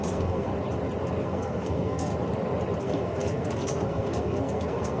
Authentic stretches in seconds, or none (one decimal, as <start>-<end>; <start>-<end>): 0.5-1.2; 2.1-2.8